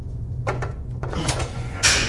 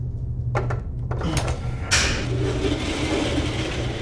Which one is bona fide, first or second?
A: second